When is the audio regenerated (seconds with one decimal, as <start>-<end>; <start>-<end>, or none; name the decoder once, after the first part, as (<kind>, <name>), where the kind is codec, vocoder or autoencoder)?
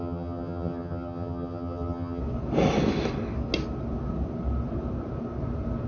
0.0-2.2 (vocoder, HiFi-GAN)